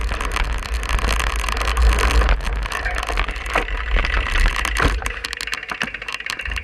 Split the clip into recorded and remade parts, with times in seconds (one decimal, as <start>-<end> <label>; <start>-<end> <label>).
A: 0.0-6.6 recorded